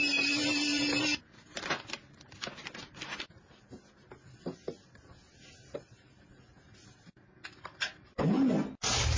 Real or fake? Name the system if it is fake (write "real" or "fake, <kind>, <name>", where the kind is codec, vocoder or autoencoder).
real